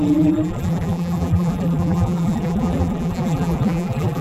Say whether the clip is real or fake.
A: fake